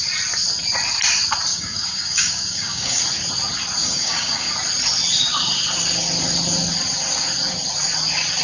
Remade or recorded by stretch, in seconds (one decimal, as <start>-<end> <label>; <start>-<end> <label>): 0.0-1.5 recorded; 1.5-3.0 remade; 3.0-3.8 recorded; 3.8-4.5 remade; 4.5-8.4 recorded